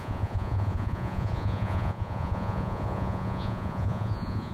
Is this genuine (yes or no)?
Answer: no